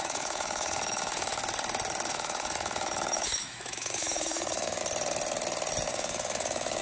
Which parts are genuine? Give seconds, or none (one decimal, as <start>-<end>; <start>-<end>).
1.4-2.1; 4.8-5.9